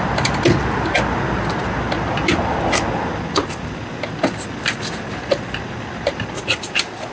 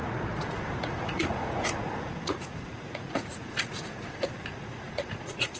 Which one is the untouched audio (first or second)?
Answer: first